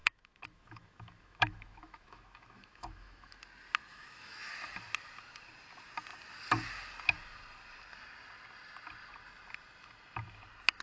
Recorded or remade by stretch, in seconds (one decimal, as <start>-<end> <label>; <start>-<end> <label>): 0.0-3.4 remade; 3.4-3.9 recorded; 3.9-4.5 remade; 4.5-10.8 recorded